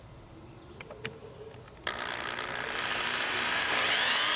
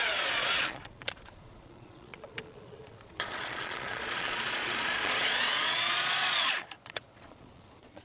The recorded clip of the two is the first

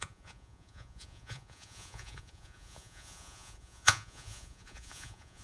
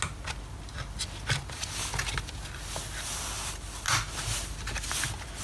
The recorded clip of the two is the second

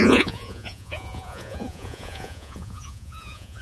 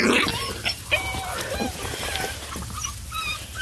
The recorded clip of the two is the second